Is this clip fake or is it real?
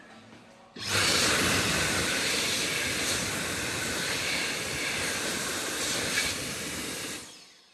real